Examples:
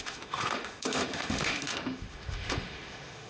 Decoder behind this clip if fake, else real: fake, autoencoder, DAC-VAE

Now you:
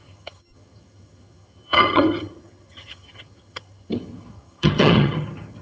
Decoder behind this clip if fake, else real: fake, vocoder, HiFi-GAN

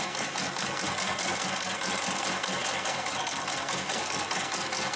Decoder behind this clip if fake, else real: fake, codec, SNAC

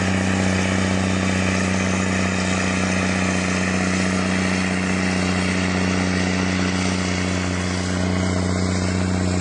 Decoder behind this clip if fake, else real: real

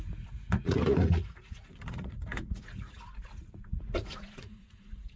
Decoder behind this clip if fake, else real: fake, vocoder, Vocos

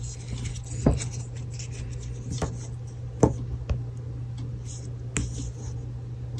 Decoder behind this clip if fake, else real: real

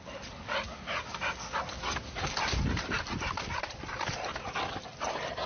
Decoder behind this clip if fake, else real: real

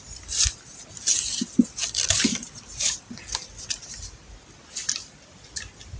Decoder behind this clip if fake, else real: real